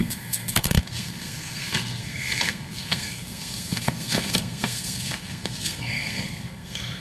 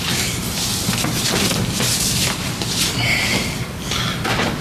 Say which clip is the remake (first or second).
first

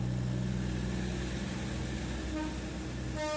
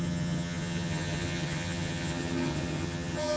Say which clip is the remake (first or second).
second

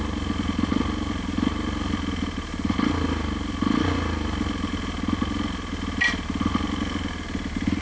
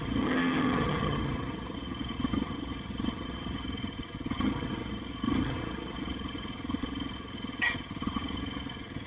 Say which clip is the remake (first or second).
second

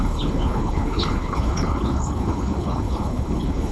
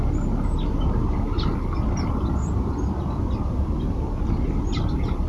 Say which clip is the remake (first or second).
first